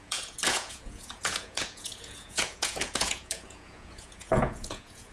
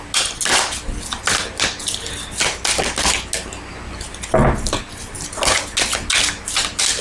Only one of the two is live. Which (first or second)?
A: second